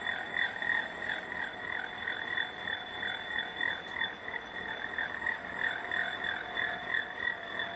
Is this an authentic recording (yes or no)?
yes